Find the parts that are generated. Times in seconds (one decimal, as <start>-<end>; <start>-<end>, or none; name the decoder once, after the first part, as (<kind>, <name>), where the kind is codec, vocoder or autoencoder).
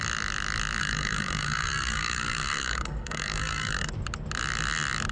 0.8-3.9 (codec, SNAC)